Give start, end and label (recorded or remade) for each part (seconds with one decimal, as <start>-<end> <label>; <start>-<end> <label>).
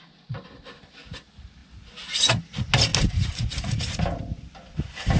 0.0-5.2 recorded